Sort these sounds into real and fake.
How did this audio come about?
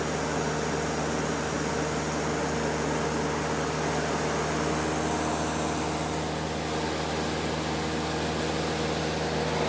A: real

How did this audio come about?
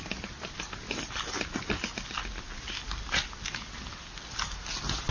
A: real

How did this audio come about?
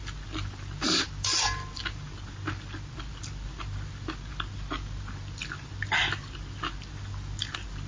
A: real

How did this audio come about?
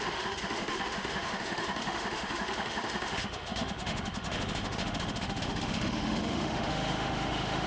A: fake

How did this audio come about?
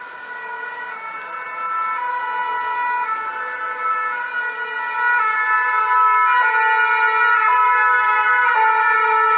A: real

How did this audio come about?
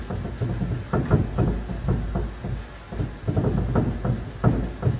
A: real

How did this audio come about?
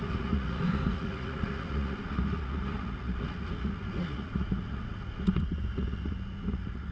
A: fake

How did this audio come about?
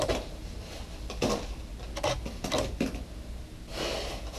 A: real